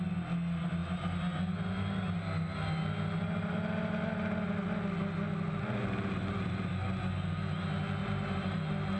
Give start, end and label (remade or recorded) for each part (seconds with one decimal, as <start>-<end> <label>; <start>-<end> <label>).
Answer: 0.0-8.0 recorded; 8.0-9.0 remade